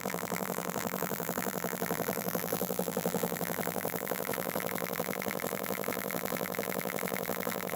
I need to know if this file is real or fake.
fake